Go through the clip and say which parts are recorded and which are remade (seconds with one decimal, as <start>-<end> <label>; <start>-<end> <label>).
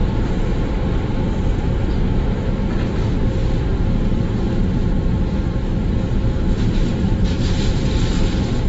0.0-6.9 recorded; 6.9-8.1 remade; 8.1-8.7 recorded